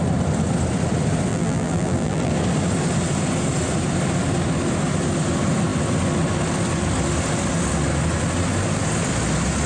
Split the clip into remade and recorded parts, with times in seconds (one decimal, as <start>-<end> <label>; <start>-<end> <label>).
0.0-1.3 recorded; 1.3-2.3 remade; 2.3-9.7 recorded

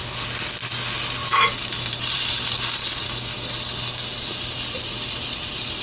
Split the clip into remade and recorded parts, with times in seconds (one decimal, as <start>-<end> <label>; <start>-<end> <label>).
0.0-1.2 recorded; 1.2-2.9 remade; 2.9-4.1 recorded; 4.1-4.8 remade; 4.8-5.8 recorded

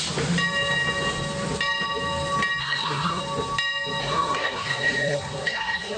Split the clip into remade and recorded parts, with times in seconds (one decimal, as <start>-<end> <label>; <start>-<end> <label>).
0.0-2.6 recorded; 2.6-3.2 remade; 3.2-4.0 recorded; 4.0-6.0 remade

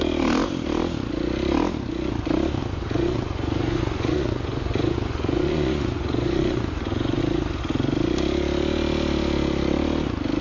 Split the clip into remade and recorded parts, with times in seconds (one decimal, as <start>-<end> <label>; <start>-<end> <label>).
0.0-2.6 recorded; 2.6-7.2 remade; 7.2-10.4 recorded

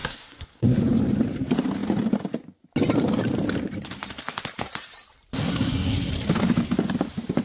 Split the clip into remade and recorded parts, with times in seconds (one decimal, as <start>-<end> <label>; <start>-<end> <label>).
0.0-0.8 remade; 0.8-5.4 recorded; 5.4-6.1 remade; 6.1-7.4 recorded

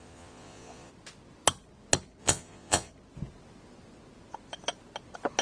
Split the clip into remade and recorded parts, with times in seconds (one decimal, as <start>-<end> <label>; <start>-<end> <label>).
0.0-0.9 remade; 0.9-2.2 recorded; 2.2-2.9 remade; 2.9-5.4 recorded

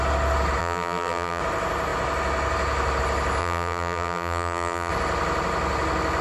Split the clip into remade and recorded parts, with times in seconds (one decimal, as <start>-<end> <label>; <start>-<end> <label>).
0.0-0.6 recorded; 0.6-1.4 remade; 1.4-3.4 recorded; 3.4-4.9 remade; 4.9-6.2 recorded